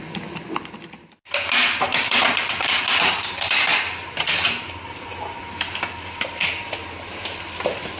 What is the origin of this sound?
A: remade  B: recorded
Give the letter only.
B